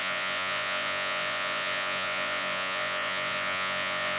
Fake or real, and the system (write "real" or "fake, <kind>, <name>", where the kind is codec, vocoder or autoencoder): fake, vocoder, Vocos